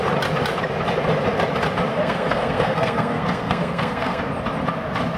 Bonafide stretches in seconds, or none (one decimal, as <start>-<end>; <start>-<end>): 0.0-1.9; 4.2-5.2